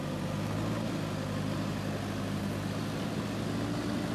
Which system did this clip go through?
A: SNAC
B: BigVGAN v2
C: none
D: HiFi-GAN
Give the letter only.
C